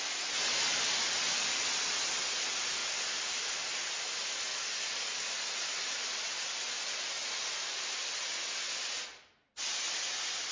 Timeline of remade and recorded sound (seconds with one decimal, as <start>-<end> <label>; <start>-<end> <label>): 0.0-10.5 recorded